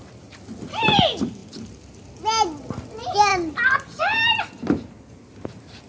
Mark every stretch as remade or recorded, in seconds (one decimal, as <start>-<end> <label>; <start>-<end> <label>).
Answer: 0.0-5.9 recorded